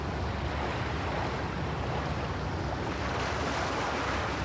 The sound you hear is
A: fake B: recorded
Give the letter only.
B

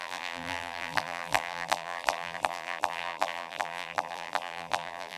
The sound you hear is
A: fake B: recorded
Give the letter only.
A